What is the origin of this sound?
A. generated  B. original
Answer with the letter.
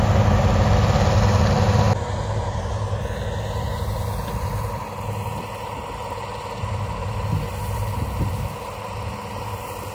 B